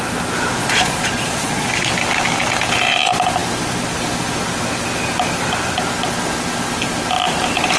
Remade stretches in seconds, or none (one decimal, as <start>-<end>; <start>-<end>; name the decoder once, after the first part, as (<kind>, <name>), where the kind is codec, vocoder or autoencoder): 0.6-1.7 (vocoder, Vocos)

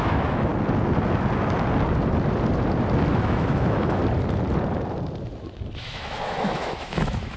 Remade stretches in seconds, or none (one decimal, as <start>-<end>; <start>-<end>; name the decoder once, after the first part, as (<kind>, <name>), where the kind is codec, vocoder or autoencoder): 0.0-0.5 (autoencoder, DAC-VAE); 3.1-4.0; 5.8-7.4

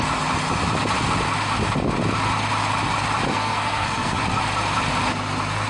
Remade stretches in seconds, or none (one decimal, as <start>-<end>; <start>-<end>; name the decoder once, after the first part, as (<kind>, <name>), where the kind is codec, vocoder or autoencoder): 3.3-4.2 (codec, SNAC)

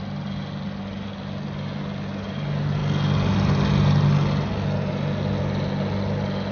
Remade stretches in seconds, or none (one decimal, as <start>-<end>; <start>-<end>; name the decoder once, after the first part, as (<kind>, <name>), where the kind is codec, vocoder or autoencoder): none

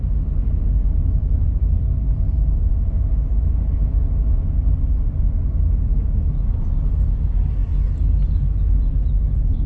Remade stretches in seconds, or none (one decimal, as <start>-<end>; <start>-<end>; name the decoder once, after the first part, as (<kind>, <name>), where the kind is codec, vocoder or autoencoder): none

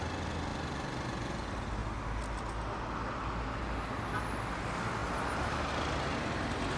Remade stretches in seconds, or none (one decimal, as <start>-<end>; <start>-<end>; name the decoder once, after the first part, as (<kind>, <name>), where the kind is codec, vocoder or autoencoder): none

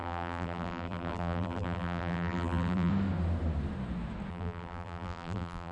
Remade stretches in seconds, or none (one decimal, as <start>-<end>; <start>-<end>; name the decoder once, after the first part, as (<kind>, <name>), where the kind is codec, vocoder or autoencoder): 0.0-2.9 (vocoder, BigVGAN v2); 4.3-5.7